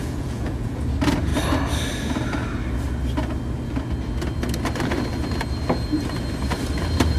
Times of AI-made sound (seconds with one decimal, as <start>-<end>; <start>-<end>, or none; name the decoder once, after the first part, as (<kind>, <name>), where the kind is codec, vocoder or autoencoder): 0.0-0.8 (vocoder, Vocos)